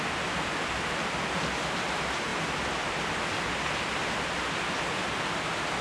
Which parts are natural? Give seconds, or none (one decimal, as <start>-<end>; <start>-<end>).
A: 0.0-5.8